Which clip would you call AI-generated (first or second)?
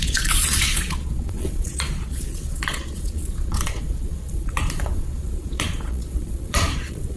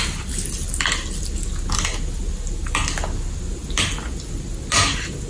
first